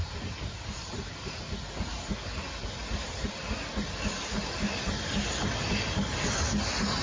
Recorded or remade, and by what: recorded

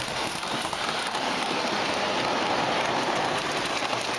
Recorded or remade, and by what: remade, vocoder, BigVGAN v2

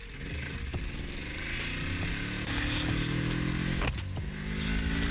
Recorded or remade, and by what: recorded